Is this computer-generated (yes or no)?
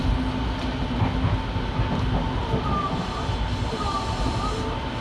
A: no